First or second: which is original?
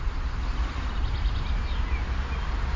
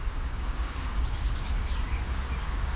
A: first